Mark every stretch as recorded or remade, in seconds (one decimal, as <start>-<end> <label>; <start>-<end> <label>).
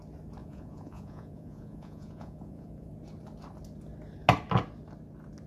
0.0-0.4 recorded; 0.4-2.9 remade; 2.9-5.5 recorded